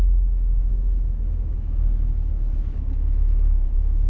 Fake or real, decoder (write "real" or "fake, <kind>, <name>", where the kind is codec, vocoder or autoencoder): fake, autoencoder, DAC-VAE